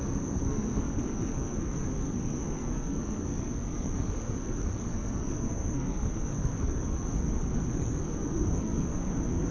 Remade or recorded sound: remade